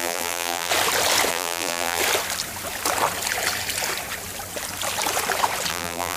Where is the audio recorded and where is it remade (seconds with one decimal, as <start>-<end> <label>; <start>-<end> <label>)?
0.0-0.7 remade; 0.7-1.3 recorded; 1.3-2.0 remade; 2.0-5.7 recorded; 5.7-6.2 remade